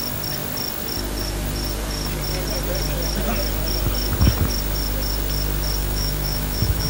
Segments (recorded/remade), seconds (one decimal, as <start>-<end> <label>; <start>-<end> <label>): 0.0-5.8 recorded; 5.8-6.9 remade